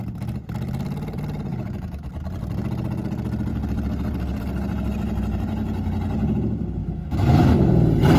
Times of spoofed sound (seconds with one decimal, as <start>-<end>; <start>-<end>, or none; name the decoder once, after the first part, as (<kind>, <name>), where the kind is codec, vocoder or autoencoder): 1.5-2.1 (autoencoder, DAC-VAE); 6.8-7.7